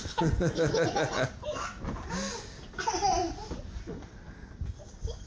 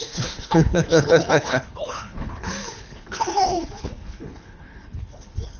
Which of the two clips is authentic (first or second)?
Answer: first